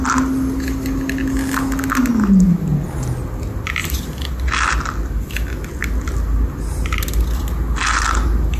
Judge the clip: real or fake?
real